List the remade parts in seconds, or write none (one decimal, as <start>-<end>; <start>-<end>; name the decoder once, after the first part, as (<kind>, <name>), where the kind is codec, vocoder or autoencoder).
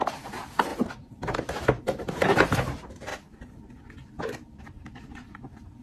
0.0-3.1 (vocoder, BigVGAN v2); 4.6-5.8